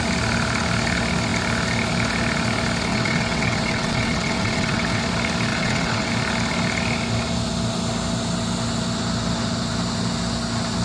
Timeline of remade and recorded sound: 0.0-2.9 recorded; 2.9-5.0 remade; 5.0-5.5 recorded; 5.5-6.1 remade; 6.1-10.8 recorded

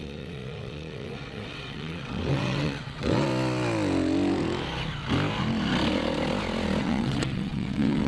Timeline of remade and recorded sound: 0.0-3.3 remade; 3.3-6.8 recorded; 6.8-8.1 remade

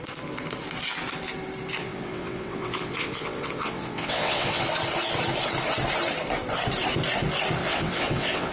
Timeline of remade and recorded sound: 0.0-1.8 recorded; 1.8-4.6 remade; 4.6-7.6 recorded; 7.6-8.5 remade

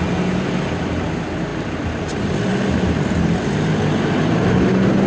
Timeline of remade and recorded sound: 0.0-5.1 recorded

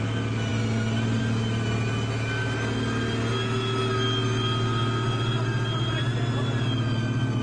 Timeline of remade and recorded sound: 0.0-7.4 recorded

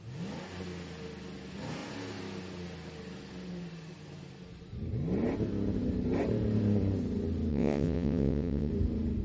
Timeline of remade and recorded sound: 0.0-7.5 recorded; 7.5-8.7 remade; 8.7-9.2 recorded